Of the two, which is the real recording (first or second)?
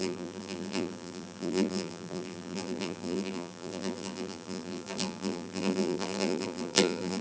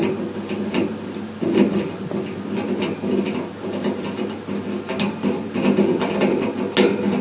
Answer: second